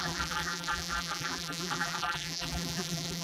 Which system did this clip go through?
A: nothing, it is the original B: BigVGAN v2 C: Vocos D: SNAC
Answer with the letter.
B